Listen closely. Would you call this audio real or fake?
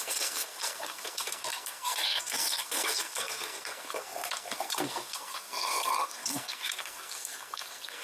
fake